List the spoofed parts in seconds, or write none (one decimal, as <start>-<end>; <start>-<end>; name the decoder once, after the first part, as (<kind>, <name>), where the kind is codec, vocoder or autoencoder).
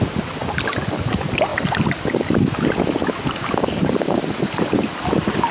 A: none